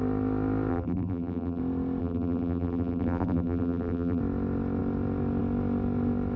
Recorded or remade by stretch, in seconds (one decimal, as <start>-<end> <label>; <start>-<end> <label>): 0.0-0.7 recorded; 0.7-1.6 remade; 1.6-2.0 recorded; 2.0-4.2 remade; 4.2-6.4 recorded